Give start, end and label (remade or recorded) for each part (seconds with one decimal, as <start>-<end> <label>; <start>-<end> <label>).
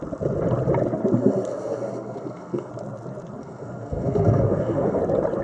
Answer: 0.0-1.5 recorded; 1.5-2.7 remade; 2.7-3.4 recorded; 3.4-5.0 remade; 5.0-5.4 recorded